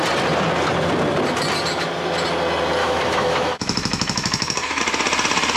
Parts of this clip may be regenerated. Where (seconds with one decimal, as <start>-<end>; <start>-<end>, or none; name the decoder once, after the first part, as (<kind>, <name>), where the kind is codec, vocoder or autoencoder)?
2.8-4.8 (autoencoder, DAC-VAE)